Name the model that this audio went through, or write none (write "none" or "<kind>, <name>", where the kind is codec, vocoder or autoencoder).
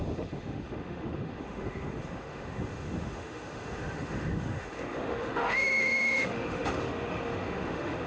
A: autoencoder, DAC-VAE